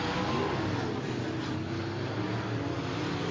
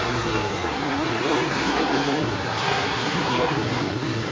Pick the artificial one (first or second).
second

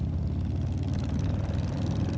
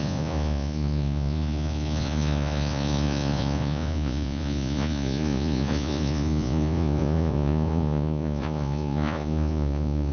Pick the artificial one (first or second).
second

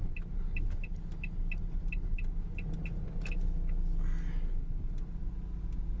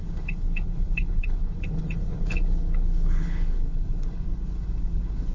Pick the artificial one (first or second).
second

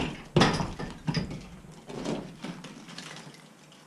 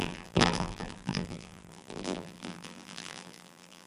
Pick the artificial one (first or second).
second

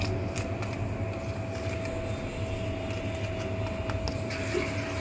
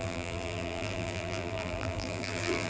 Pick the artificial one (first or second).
second